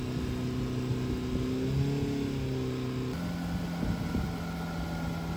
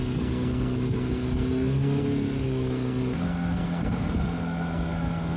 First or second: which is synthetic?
second